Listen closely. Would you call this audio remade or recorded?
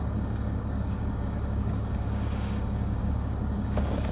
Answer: remade